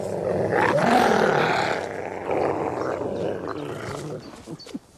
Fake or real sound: real